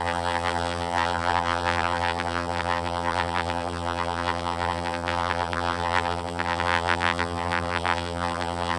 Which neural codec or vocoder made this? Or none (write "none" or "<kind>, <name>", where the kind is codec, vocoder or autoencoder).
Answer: vocoder, BigVGAN v2